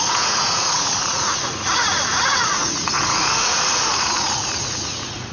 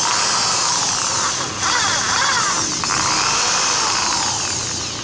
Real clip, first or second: second